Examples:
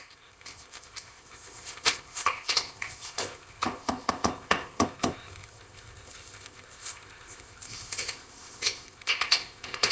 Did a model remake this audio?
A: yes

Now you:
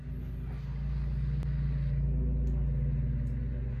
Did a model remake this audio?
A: no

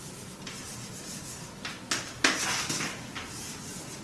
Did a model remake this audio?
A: no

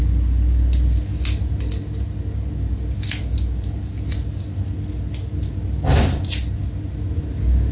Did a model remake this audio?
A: no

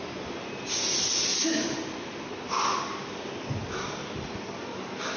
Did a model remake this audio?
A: no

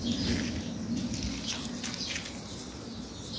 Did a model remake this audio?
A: no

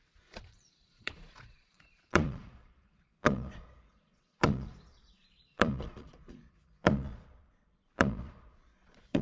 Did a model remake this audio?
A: yes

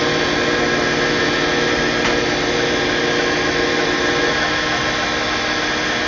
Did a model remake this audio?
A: no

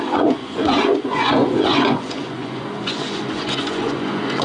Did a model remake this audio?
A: yes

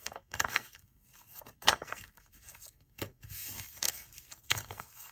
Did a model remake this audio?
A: yes